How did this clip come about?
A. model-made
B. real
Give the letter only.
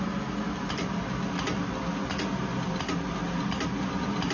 B